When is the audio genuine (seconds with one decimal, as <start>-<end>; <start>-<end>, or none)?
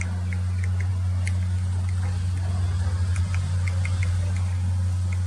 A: 0.0-5.3